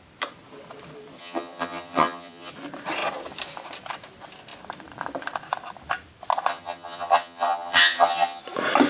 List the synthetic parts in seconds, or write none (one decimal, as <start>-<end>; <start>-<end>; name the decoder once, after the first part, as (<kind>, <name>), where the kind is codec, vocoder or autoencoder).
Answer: 1.2-2.5 (vocoder, HiFi-GAN); 6.5-8.4